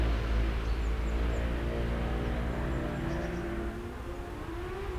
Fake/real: real